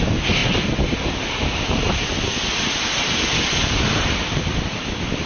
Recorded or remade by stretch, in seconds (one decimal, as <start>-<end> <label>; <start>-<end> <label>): 0.0-0.4 remade; 0.4-3.6 recorded; 3.6-5.3 remade